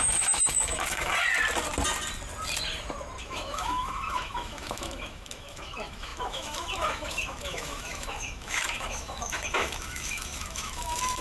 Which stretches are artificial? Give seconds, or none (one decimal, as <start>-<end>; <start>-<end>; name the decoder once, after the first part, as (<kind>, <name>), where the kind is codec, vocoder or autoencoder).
0.0-1.1 (autoencoder, DAC-VAE); 3.2-11.2